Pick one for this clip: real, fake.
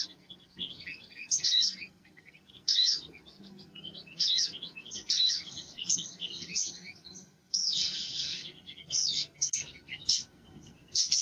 fake